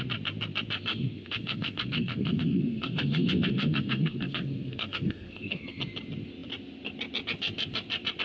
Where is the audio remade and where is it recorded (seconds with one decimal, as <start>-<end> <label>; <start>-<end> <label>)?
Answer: 0.0-0.9 recorded; 0.9-5.8 remade; 5.8-8.2 recorded